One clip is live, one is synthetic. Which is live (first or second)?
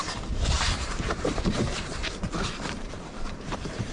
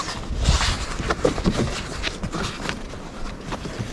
second